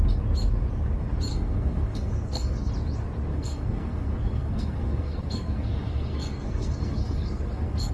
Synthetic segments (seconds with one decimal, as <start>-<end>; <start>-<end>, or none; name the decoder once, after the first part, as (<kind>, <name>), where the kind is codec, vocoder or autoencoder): 1.3-2.7 (codec, SNAC); 3.3-7.9

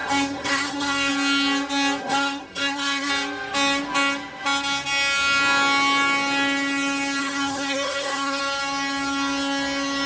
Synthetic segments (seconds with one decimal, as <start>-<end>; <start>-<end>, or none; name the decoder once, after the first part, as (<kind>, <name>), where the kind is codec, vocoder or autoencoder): 0.0-1.1 (codec, SNAC); 2.0-3.1; 7.2-8.4